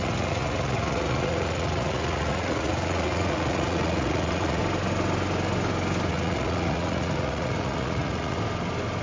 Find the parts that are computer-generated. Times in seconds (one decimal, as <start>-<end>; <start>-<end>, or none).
0.0-4.6; 6.1-8.4